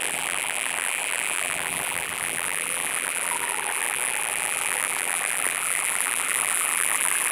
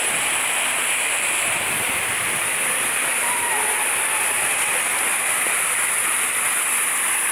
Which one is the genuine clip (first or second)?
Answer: second